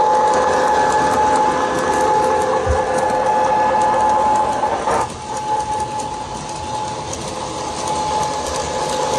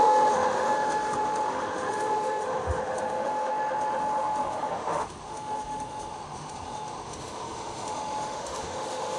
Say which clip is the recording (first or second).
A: first